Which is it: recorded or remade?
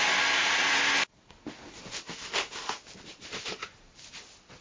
recorded